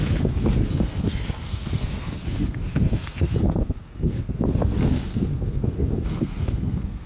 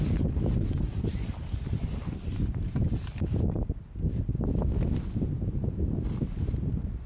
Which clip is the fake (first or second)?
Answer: first